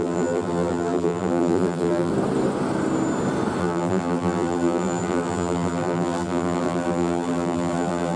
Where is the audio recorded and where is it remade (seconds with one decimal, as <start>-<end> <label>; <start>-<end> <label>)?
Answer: 0.0-2.1 remade; 2.1-3.6 recorded; 3.6-8.2 remade